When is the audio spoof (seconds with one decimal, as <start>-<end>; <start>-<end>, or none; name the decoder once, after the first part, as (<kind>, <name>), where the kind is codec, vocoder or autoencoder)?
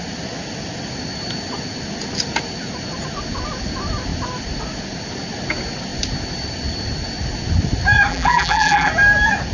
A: 8.1-8.9 (vocoder, BigVGAN v2)